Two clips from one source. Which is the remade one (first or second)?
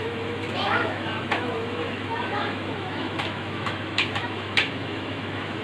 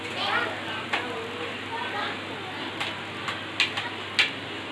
first